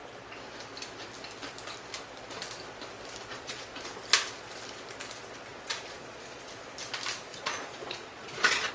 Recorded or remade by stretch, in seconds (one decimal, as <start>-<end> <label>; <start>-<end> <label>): 0.0-3.3 recorded; 3.3-3.9 remade; 3.9-5.5 recorded; 5.5-6.5 remade; 6.5-7.3 recorded; 7.3-8.7 remade